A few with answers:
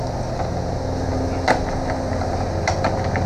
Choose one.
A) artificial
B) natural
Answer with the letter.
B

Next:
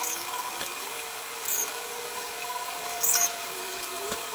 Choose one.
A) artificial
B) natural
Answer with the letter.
A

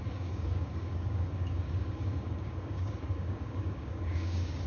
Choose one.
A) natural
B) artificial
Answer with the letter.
B